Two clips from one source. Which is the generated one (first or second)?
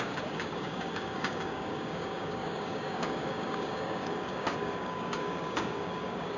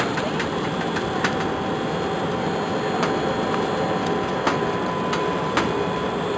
first